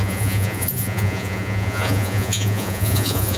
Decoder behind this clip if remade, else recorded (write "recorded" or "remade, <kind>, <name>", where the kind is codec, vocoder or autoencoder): remade, vocoder, Vocos